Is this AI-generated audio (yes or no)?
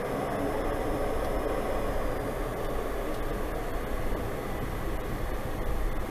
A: no